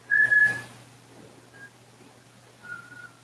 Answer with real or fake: real